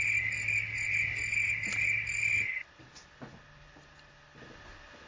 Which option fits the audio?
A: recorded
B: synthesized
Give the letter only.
A